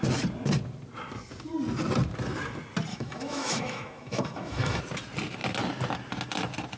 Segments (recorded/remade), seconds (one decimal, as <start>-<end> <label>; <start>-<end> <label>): 0.0-2.9 recorded; 2.9-4.8 remade; 4.8-6.8 recorded